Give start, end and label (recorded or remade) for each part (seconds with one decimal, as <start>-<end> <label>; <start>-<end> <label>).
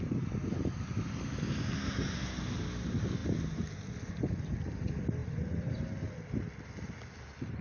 0.0-7.6 recorded